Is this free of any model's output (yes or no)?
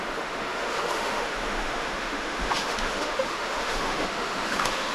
no